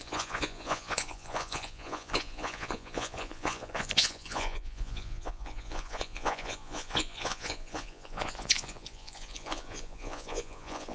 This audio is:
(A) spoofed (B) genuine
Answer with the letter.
A